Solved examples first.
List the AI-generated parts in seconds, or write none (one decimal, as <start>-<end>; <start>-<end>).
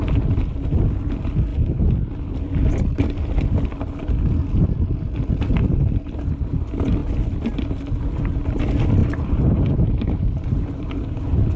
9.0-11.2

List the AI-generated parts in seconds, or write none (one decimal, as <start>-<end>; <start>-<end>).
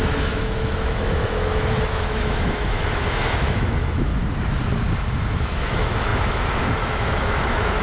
0.0-4.1; 5.4-7.8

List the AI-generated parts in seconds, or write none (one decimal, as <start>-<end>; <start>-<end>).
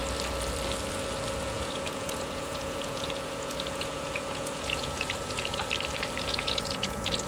1.4-5.6; 6.2-7.3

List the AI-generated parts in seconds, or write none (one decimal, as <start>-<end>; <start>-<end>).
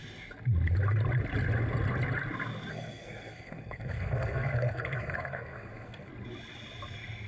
2.7-6.1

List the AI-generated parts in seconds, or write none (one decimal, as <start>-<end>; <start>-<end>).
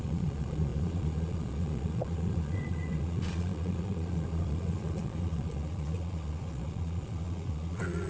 0.0-8.1